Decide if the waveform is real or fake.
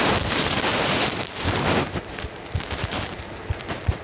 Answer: fake